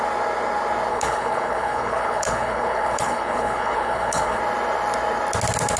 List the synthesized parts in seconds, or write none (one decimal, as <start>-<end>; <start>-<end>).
0.9-4.4

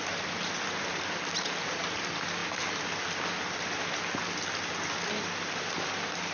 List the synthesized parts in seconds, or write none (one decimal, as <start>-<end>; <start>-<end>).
none